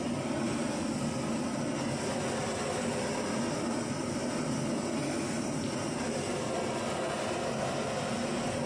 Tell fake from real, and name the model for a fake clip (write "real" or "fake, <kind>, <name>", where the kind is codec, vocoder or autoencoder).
real